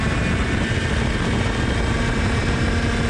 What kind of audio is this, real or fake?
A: real